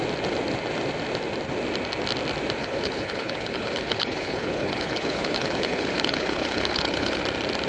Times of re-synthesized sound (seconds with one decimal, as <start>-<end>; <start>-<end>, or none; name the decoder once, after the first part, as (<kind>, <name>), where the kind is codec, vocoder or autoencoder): 2.6-7.2 (codec, HILCodec)